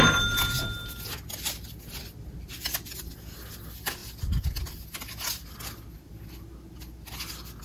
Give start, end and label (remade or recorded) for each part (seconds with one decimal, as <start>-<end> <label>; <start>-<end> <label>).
0.0-7.6 recorded

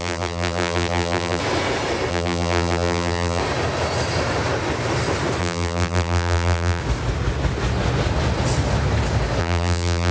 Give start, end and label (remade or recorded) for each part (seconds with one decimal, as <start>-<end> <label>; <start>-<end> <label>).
0.0-1.4 remade; 1.4-2.1 recorded; 2.1-3.4 remade; 3.4-5.4 recorded; 5.4-6.8 remade; 6.8-9.4 recorded; 9.4-10.1 remade

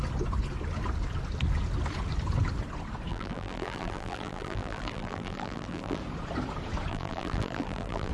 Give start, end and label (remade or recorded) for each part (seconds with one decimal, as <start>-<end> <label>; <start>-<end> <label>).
0.0-3.1 recorded; 3.1-6.0 remade; 6.0-6.9 recorded; 6.9-8.1 remade